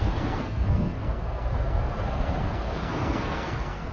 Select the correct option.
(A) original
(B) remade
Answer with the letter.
B